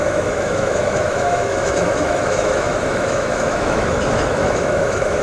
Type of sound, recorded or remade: remade